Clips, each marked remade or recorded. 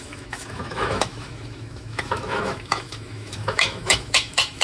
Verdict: remade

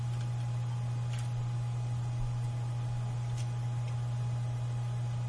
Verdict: recorded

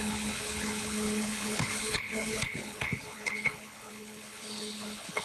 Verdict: remade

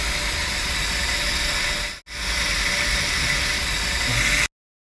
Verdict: recorded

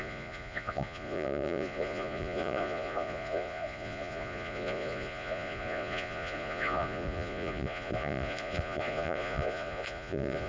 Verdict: remade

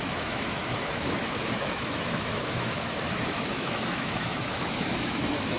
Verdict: remade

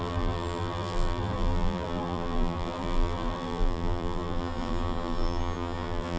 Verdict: remade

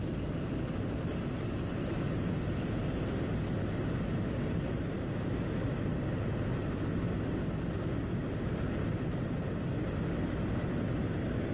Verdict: recorded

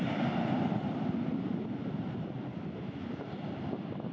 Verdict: recorded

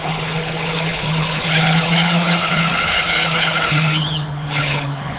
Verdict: remade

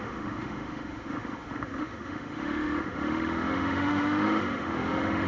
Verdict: remade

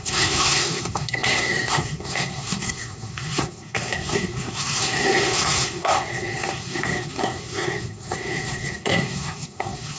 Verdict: remade